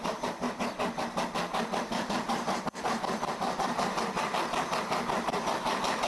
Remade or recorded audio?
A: remade